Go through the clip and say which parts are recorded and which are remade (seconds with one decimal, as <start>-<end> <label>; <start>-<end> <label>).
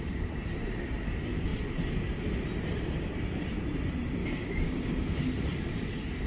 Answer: 0.0-4.2 recorded; 4.2-5.2 remade; 5.2-6.3 recorded